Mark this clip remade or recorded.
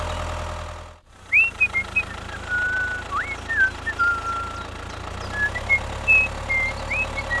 recorded